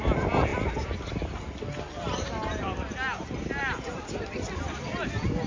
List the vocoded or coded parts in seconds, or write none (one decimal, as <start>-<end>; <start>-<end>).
none